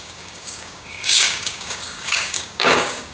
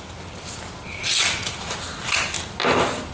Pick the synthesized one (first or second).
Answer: first